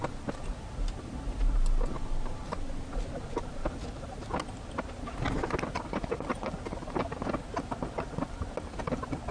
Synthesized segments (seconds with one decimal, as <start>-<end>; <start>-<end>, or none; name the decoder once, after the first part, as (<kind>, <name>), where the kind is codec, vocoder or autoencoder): none